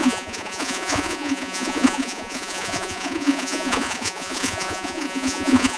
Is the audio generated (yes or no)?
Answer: yes